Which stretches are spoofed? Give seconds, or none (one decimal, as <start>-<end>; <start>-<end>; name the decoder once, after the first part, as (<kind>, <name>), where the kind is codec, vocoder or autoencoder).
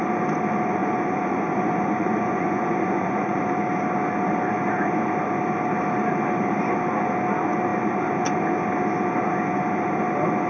0.8-3.4 (vocoder, Vocos)